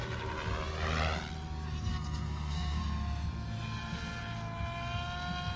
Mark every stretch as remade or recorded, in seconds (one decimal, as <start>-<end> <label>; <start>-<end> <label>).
0.0-1.9 recorded; 1.9-2.8 remade; 2.8-5.6 recorded